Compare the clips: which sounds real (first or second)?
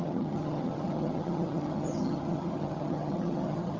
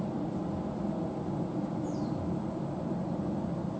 second